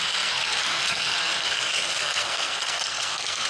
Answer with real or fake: fake